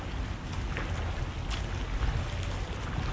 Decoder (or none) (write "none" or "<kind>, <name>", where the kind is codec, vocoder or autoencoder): none